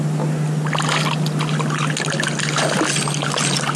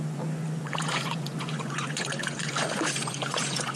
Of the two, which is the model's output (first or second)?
second